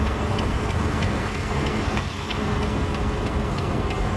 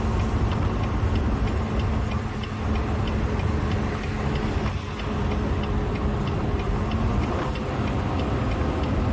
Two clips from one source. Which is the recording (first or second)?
second